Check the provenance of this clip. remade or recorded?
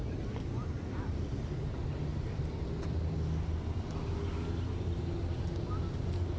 recorded